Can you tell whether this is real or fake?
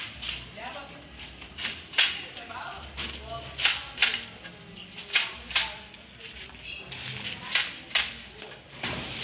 real